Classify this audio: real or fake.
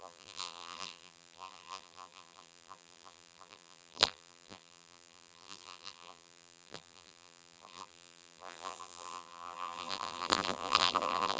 fake